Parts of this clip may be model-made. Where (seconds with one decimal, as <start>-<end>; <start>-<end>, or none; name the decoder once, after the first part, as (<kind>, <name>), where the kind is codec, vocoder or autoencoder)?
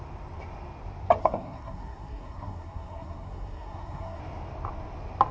1.2-4.2 (codec, SNAC)